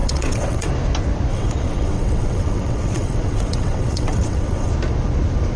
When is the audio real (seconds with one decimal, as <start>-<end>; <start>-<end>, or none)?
0.7-1.3; 4.7-5.6